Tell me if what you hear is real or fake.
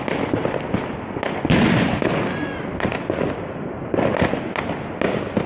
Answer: real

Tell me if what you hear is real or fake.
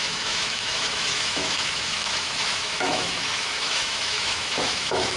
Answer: fake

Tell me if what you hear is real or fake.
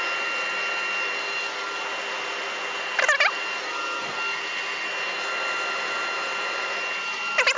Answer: real